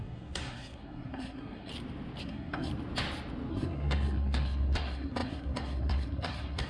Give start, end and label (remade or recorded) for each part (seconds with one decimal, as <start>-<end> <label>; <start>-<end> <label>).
0.0-1.7 remade; 1.7-2.2 recorded; 2.2-2.7 remade; 2.7-3.5 recorded; 3.5-6.7 remade